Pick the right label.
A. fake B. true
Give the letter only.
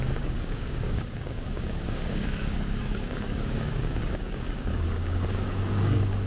A